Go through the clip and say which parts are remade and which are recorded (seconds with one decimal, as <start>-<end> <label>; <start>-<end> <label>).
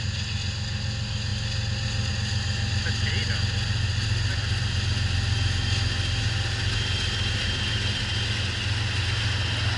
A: 0.0-3.9 recorded; 3.9-4.7 remade; 4.7-9.8 recorded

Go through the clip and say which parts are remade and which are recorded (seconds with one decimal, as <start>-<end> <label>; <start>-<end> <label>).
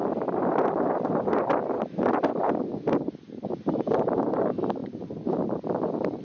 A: 0.0-4.8 recorded; 4.8-5.7 remade; 5.7-6.2 recorded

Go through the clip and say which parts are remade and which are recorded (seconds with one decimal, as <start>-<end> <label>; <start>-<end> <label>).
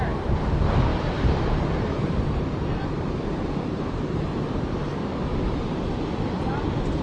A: 0.0-0.9 recorded; 0.9-4.8 remade; 4.8-7.0 recorded